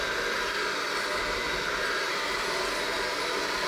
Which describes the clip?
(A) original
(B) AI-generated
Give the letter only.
A